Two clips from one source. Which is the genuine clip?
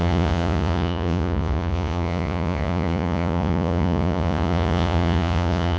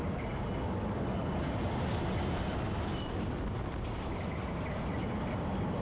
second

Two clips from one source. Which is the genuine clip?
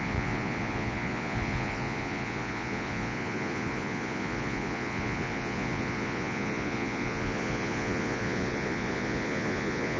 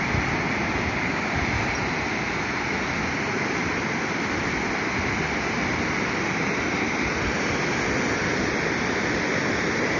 second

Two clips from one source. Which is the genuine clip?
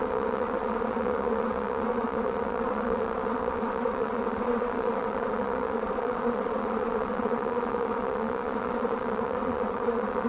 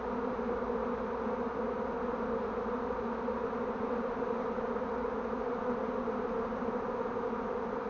second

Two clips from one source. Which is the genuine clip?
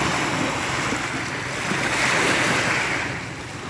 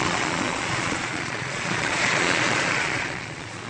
first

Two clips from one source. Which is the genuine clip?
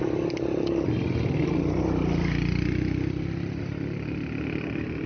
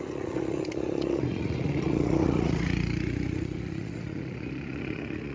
first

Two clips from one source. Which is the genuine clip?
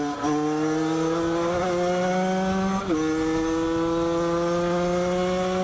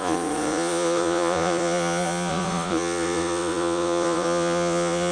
first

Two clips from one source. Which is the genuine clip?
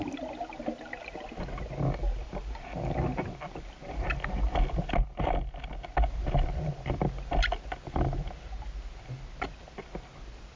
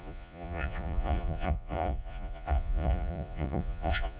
first